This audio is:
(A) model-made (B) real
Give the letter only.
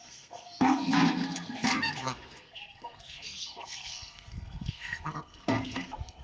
A